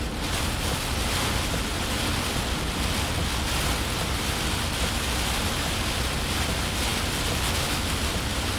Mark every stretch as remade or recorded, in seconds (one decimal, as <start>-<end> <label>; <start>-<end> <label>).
0.0-8.6 recorded